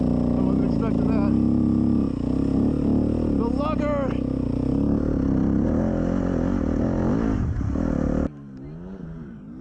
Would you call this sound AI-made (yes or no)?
no